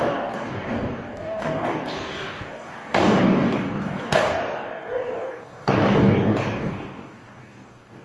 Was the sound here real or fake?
fake